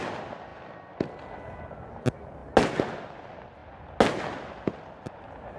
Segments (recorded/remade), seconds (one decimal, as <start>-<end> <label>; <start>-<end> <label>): 0.0-5.6 recorded